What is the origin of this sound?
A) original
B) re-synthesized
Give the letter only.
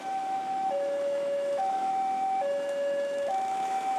B